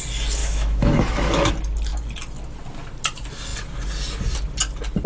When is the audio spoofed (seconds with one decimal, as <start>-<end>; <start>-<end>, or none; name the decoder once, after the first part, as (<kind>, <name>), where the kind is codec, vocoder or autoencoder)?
0.4-1.5 (autoencoder, DAC-VAE)